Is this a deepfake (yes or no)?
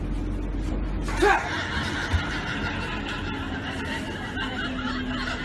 no